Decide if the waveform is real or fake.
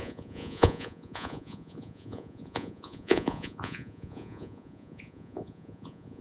fake